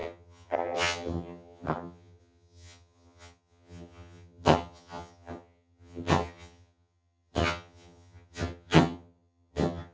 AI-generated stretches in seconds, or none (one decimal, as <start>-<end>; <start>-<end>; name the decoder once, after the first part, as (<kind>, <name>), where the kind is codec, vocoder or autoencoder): 0.0-9.9 (vocoder, HiFi-GAN)